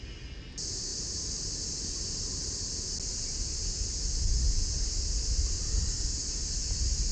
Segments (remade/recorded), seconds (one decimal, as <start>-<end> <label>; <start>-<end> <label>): 0.0-7.1 recorded